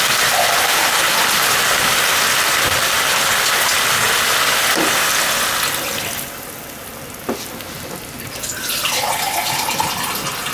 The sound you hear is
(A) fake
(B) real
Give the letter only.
B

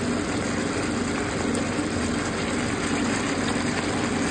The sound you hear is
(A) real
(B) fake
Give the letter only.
A